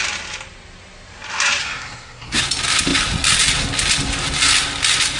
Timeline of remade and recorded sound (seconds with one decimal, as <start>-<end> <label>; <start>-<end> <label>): 0.0-1.6 recorded; 1.6-2.4 remade; 2.4-5.2 recorded